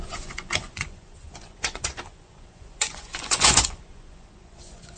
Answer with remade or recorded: remade